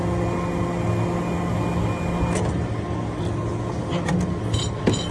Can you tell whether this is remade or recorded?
recorded